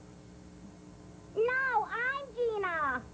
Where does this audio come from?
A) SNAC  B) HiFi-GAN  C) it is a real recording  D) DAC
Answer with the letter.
C